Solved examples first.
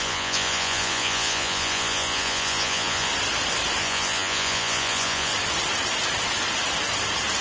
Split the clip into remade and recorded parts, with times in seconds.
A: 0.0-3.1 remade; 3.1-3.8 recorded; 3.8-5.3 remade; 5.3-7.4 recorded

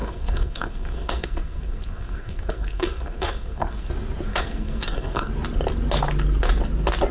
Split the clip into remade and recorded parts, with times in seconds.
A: 0.0-3.9 remade; 3.9-4.3 recorded; 4.3-5.3 remade; 5.3-7.1 recorded

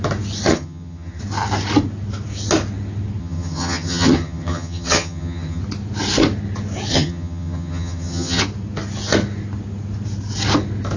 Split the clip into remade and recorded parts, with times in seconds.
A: 0.0-0.5 recorded; 0.5-1.2 remade; 1.2-3.2 recorded; 3.2-5.6 remade; 5.6-6.9 recorded; 6.9-8.4 remade; 8.4-11.0 recorded

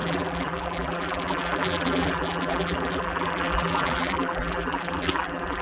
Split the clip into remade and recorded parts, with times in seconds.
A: 0.0-5.6 remade